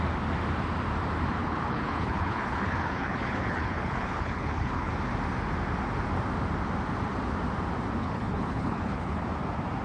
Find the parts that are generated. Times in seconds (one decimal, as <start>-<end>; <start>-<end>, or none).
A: 1.4-4.9; 8.0-9.2